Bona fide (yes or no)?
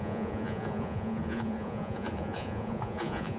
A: no